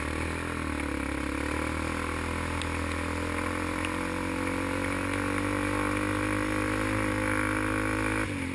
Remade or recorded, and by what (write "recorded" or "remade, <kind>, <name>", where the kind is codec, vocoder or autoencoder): recorded